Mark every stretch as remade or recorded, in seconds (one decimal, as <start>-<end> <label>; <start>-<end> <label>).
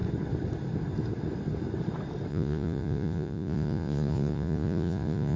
0.0-2.3 recorded; 2.3-5.4 remade